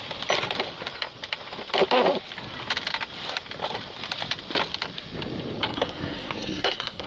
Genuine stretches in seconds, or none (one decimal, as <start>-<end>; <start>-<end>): 0.0-5.7